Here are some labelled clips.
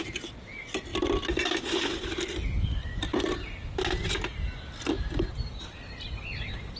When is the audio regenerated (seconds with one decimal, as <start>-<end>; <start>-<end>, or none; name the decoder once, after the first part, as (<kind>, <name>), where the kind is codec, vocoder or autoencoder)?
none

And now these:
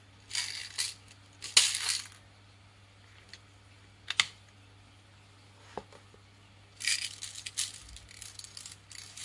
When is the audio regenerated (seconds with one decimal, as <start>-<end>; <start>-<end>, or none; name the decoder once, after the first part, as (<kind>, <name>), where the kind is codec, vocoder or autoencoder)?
none

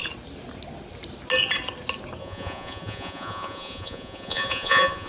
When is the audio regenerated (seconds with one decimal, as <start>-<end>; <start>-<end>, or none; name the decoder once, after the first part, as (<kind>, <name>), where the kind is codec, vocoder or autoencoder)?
2.2-5.1 (vocoder, Vocos)

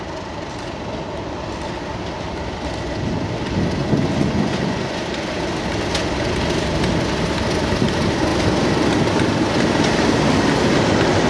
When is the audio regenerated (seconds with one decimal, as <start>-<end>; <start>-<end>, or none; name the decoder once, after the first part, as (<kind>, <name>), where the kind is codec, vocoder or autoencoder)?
3.8-5.0 (vocoder, Vocos)

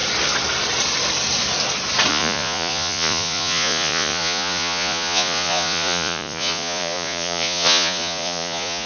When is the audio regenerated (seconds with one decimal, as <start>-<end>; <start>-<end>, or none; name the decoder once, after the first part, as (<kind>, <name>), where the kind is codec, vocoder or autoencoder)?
2.1-8.9 (vocoder, Vocos)

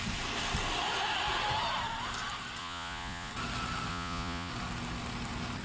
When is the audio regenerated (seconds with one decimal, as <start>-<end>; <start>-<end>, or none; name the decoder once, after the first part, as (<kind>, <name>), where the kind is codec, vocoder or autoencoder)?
2.6-3.3 (vocoder, Vocos); 3.9-4.5

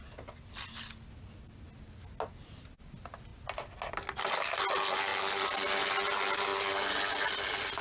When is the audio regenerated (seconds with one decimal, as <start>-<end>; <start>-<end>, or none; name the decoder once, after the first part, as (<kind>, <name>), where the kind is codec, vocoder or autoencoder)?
none

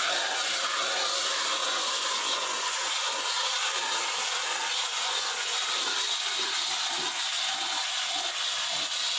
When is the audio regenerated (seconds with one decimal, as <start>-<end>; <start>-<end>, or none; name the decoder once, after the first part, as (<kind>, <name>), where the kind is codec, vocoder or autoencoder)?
1.6-3.1 (vocoder, Vocos); 4.9-5.6